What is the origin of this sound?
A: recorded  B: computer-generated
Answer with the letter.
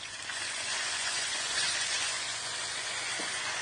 B